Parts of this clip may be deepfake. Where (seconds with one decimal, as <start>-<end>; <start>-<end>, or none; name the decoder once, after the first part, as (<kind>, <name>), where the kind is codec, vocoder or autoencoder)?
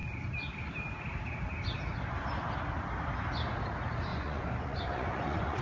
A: 4.1-5.6 (vocoder, Vocos)